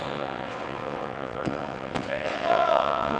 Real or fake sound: fake